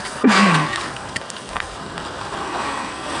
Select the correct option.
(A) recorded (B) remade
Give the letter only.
B